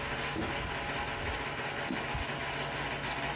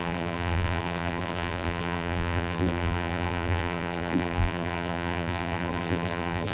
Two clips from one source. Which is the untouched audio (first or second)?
first